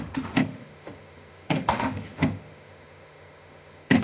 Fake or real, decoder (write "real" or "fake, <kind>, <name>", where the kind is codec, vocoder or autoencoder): fake, autoencoder, DAC-VAE